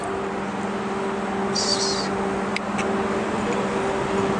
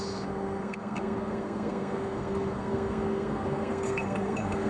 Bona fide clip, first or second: first